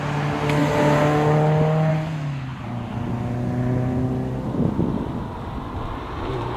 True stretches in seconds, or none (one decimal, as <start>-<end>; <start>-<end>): 0.0-6.6